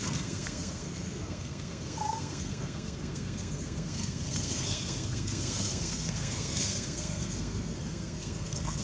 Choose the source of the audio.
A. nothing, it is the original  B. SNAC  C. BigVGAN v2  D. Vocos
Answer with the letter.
B